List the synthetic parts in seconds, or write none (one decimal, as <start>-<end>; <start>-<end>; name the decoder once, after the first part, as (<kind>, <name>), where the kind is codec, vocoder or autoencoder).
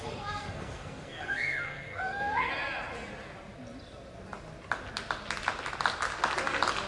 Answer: 0.0-2.5 (codec, SNAC)